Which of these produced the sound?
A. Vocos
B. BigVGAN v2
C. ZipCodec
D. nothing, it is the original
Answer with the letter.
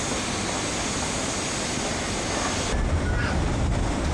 D